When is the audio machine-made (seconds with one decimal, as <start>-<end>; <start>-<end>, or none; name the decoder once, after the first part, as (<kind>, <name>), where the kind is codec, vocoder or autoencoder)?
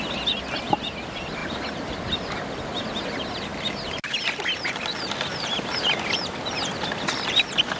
none